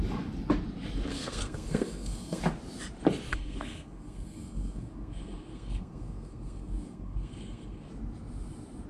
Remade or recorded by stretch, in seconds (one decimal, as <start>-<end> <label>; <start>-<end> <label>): 0.0-1.1 recorded; 1.1-2.4 remade; 2.4-3.3 recorded; 3.3-7.9 remade; 7.9-8.9 recorded